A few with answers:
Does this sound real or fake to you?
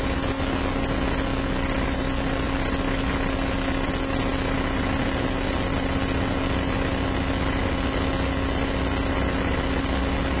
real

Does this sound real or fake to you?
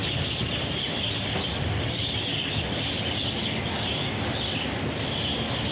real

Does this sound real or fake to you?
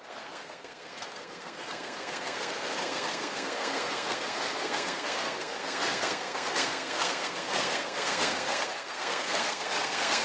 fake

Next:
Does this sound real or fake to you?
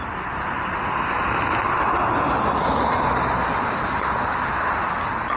real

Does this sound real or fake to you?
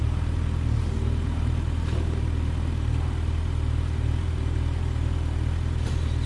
real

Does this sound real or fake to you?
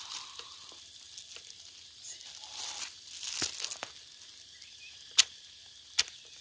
real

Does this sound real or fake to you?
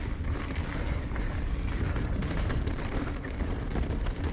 real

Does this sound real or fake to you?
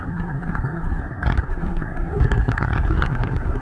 fake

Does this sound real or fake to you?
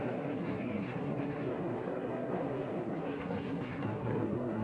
fake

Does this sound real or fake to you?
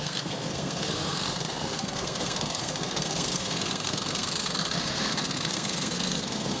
fake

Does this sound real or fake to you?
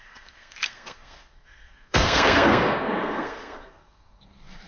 fake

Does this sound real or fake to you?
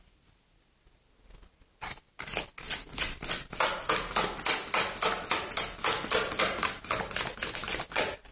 real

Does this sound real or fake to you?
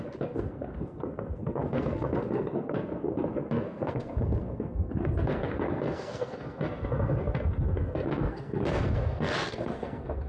fake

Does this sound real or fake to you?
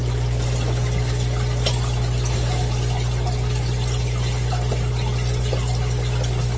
real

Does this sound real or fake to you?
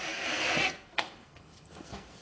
fake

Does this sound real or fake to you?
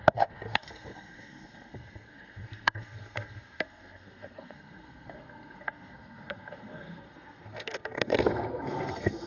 fake